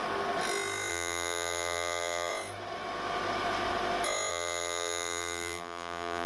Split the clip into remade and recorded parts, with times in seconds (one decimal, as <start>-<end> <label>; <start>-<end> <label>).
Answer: 0.0-0.9 recorded; 0.9-2.3 remade; 2.3-4.3 recorded; 4.3-6.3 remade